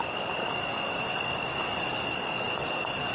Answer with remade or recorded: remade